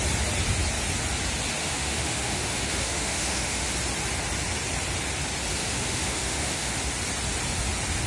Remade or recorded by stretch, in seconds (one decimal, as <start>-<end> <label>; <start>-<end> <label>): 0.0-1.6 recorded; 1.6-3.7 remade; 3.7-5.6 recorded; 5.6-6.8 remade; 6.8-8.1 recorded